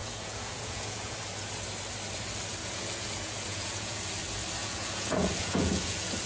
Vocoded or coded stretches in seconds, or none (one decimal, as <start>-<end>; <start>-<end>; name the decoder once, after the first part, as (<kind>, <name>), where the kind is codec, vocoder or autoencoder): 0.0-1.2 (vocoder, Vocos); 2.6-4.0; 4.6-6.3

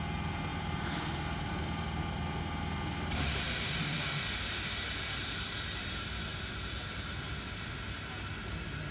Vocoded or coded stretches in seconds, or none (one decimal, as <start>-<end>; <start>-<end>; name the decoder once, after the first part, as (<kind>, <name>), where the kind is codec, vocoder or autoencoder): 0.5-1.5 (vocoder, BigVGAN v2); 6.3-7.7

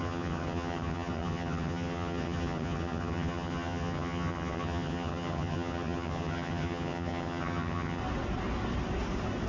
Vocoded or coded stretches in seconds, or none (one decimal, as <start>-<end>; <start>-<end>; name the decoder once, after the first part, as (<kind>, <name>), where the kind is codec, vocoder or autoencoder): 0.0-8.0 (vocoder, HiFi-GAN)

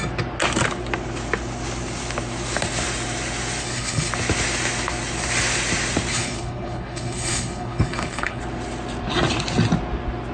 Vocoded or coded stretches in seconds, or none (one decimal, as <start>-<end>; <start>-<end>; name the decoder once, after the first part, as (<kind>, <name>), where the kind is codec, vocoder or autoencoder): 3.6-4.1 (codec, HILCodec); 6.1-8.4

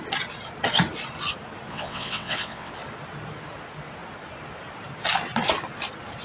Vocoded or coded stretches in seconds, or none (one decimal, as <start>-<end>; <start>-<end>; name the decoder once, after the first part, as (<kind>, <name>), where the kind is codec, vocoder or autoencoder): 1.7-2.7 (vocoder, WaveNeXt)